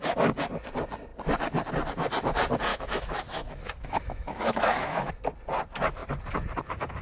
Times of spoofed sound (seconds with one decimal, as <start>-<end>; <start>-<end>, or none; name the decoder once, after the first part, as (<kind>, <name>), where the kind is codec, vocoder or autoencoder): 2.7-5.1 (autoencoder, DAC-VAE)